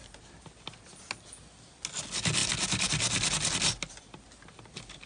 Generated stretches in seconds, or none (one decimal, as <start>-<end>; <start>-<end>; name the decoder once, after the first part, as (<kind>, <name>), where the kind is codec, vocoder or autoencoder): none